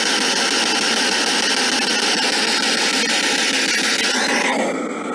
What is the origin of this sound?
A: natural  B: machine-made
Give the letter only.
A